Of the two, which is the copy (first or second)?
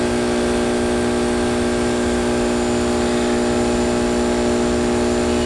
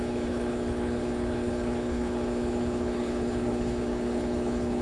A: second